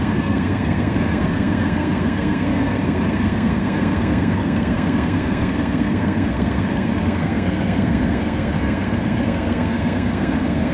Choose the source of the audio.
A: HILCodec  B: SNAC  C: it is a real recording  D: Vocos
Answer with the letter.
B